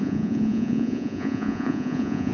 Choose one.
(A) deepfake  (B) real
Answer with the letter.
A